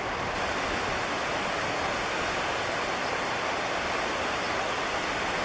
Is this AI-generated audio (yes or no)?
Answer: no